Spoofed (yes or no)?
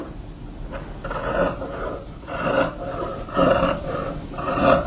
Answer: yes